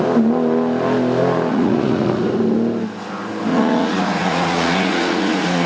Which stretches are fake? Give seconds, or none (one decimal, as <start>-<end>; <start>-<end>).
1.5-2.2; 3.5-5.7